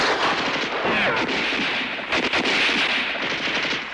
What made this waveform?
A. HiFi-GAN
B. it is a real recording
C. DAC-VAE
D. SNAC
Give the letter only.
B